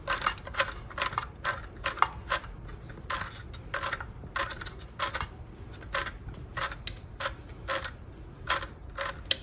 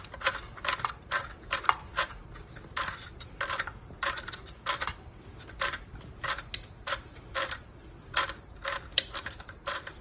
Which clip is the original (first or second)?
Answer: first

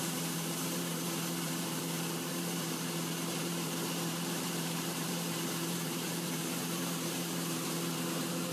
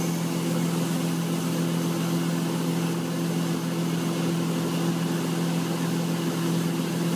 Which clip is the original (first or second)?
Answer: second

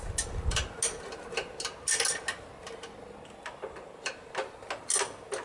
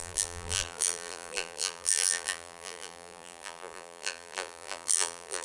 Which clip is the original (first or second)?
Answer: first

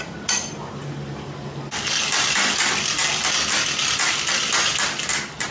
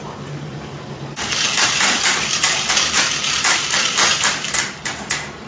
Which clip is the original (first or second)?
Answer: first